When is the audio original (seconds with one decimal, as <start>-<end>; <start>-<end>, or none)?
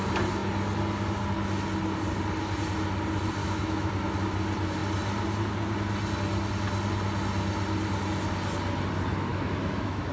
0.0-3.4; 3.9-9.3